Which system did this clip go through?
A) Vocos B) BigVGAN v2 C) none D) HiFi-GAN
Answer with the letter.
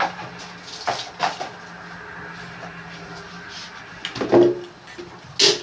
C